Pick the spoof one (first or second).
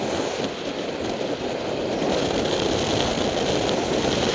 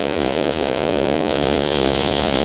second